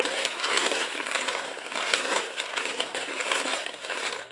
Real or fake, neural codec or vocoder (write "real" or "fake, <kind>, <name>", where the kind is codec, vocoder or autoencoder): fake, codec, SNAC